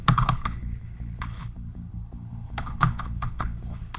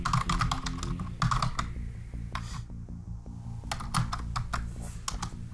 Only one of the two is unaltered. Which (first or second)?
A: second